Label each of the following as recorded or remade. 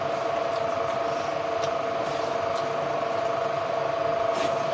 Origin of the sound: recorded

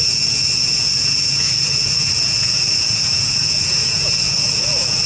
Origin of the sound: remade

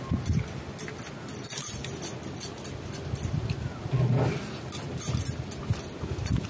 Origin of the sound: recorded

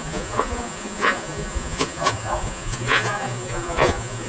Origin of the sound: remade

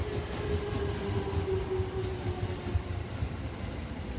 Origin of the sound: recorded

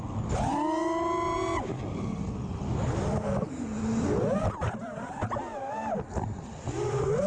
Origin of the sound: recorded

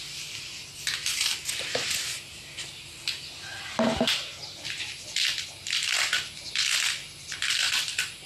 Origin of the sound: recorded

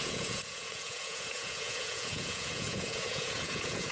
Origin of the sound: remade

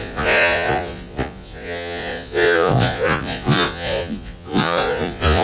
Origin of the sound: remade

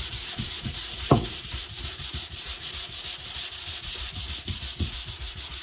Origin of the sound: remade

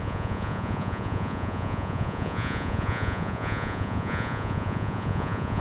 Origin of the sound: remade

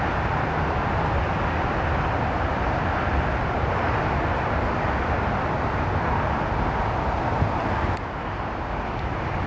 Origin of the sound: recorded